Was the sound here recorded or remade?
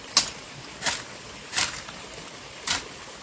recorded